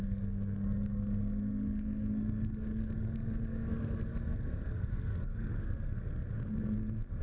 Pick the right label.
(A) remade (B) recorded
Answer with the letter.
A